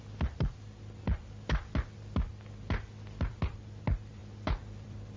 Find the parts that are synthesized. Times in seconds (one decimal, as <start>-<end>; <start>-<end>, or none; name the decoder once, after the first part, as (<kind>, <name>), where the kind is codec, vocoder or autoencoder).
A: 4.2-5.2 (vocoder, BigVGAN v2)